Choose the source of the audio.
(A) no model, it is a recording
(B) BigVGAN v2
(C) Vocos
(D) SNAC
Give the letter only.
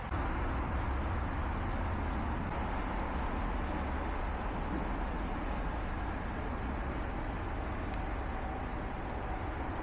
A